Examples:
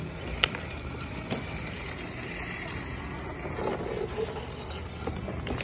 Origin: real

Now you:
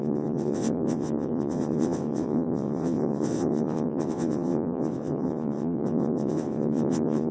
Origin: fake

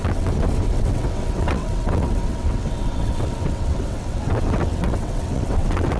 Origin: fake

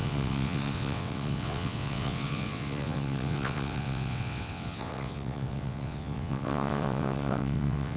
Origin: fake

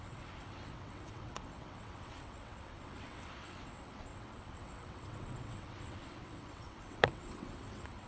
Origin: fake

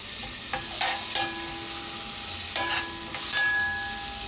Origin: real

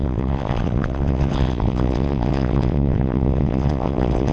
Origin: fake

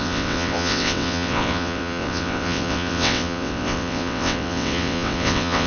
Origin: fake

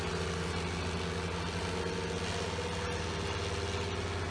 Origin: real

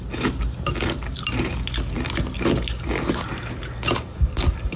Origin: real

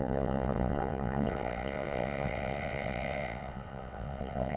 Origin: fake